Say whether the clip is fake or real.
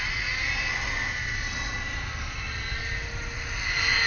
real